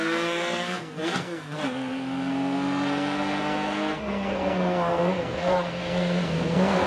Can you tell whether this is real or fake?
fake